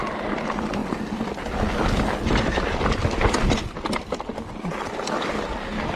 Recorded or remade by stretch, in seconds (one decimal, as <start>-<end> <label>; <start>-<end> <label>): 0.0-6.0 recorded